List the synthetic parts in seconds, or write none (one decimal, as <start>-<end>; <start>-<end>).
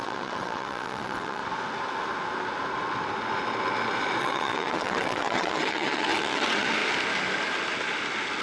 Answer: 0.0-1.4; 4.2-6.8